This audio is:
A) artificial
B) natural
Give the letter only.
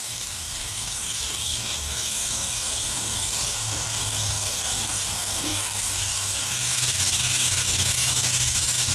A